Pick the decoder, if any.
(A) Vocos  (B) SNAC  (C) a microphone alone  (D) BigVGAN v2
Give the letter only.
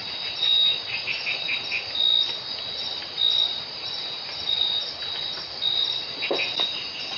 C